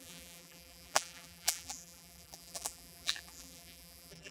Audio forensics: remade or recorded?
remade